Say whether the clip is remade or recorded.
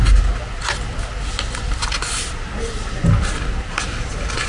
recorded